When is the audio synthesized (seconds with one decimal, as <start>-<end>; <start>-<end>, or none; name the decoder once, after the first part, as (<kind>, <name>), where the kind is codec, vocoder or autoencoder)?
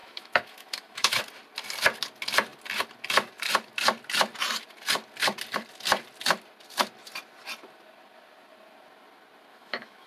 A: 0.0-1.2 (autoencoder, DAC-VAE); 9.5-10.1